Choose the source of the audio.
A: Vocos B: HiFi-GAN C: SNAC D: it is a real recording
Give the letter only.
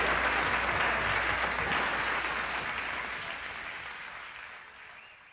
D